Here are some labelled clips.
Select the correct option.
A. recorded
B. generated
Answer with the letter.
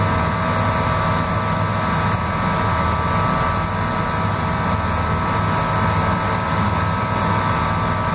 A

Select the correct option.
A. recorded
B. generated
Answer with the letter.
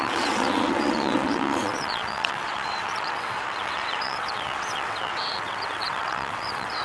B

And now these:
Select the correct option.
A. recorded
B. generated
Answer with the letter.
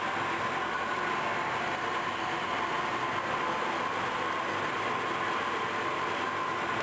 A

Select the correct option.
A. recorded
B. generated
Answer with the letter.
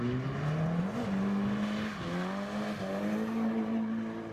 A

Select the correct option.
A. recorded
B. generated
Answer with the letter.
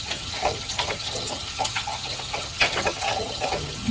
B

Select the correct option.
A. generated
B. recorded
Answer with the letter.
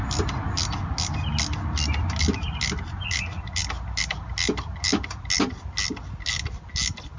B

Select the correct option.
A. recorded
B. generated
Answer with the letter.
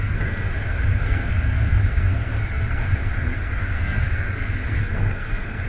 B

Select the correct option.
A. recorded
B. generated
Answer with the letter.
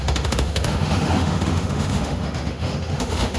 B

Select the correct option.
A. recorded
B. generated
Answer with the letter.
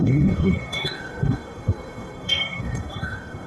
B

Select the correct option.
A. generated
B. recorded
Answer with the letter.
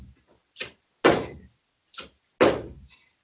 B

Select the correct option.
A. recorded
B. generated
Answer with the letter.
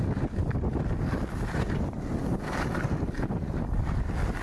A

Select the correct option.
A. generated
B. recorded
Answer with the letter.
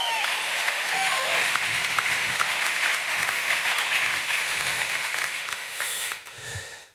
A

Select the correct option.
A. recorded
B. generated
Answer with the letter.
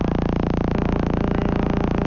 A